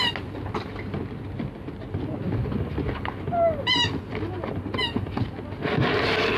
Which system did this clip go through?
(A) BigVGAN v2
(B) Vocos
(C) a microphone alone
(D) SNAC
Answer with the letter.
C